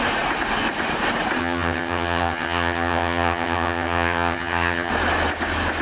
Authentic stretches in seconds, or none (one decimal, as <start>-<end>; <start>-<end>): 0.0-1.4; 4.9-5.8